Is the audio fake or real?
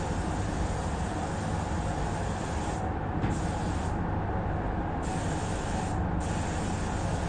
real